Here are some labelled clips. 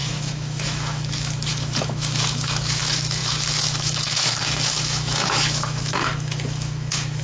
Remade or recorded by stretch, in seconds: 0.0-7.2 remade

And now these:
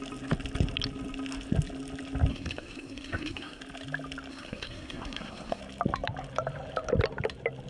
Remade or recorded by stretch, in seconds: 0.0-2.3 recorded; 2.3-3.6 remade; 3.6-4.3 recorded; 4.3-5.6 remade; 5.6-7.7 recorded